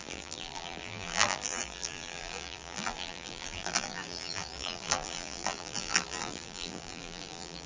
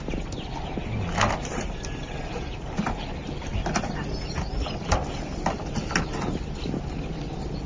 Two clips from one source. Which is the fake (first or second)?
first